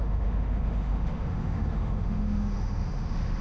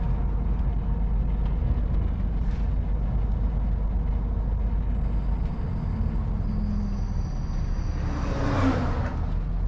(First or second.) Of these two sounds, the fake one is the first